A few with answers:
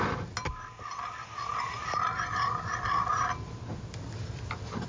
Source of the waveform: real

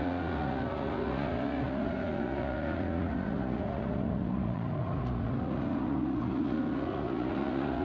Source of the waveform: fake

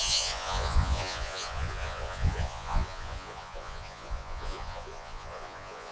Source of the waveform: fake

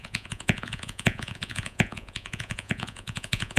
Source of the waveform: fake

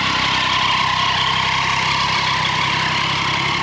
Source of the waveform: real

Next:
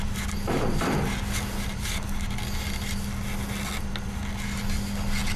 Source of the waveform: real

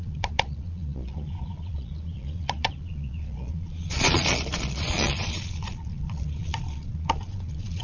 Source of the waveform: fake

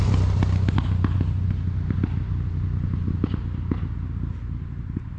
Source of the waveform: real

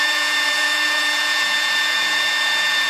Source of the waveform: fake